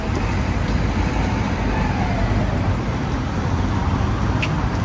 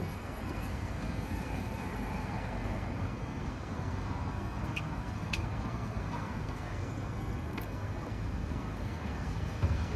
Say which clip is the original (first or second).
first